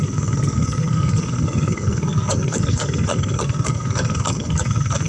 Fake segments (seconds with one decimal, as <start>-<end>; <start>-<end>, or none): 0.0-5.1